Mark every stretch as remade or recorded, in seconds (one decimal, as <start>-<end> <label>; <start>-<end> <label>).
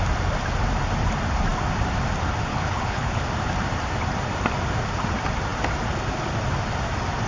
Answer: 0.0-2.5 recorded; 2.5-3.2 remade; 3.2-7.3 recorded